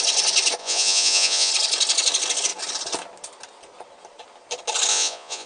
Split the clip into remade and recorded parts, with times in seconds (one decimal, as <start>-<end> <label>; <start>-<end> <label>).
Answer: 0.0-0.6 recorded; 0.6-1.5 remade; 1.5-4.9 recorded; 4.9-5.5 remade